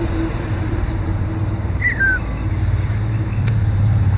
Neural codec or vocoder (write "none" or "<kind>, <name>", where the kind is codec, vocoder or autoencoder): vocoder, BigVGAN v2